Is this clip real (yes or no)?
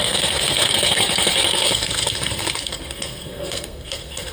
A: no